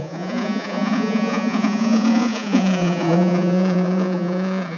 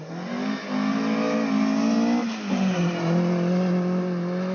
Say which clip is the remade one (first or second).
first